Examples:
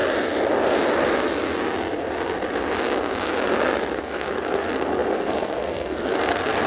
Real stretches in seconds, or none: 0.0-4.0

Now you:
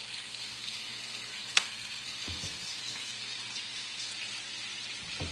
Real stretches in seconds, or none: 4.1-5.3